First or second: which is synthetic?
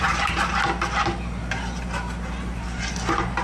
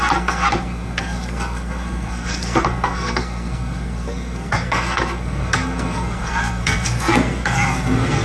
second